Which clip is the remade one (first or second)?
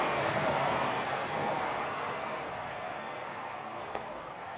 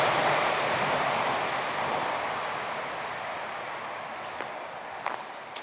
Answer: first